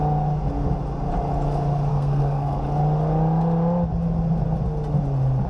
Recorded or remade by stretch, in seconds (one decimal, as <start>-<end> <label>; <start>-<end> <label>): 0.0-1.9 recorded; 1.9-2.6 remade; 2.6-5.5 recorded